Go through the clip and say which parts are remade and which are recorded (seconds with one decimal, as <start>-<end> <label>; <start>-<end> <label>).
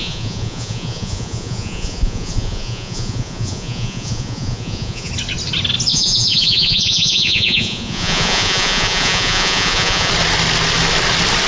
0.0-5.1 remade; 5.1-5.9 recorded; 5.9-10.1 remade; 10.1-11.5 recorded